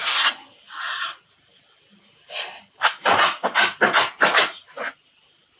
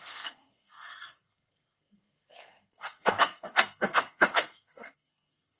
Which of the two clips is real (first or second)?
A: first